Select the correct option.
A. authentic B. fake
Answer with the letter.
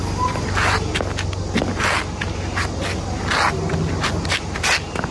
A